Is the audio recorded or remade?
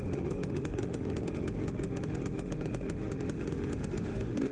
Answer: remade